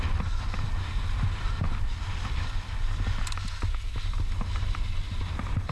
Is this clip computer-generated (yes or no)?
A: no